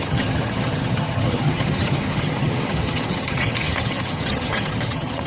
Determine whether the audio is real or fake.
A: fake